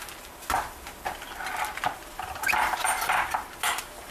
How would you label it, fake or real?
real